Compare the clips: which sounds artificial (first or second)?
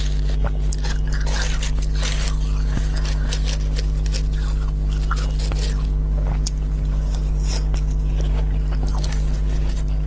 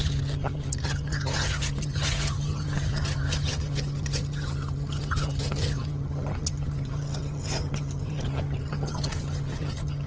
second